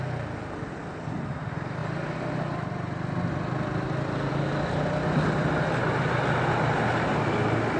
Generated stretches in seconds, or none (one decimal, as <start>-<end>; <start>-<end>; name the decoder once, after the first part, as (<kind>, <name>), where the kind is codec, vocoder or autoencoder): none